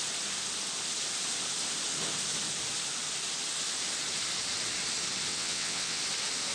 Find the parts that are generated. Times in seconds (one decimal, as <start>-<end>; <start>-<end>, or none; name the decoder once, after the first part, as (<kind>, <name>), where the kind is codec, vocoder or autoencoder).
5.3-6.0 (vocoder, WaveNeXt)